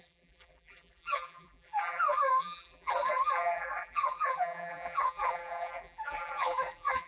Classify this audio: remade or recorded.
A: remade